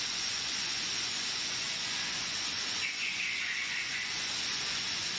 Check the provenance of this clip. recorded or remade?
remade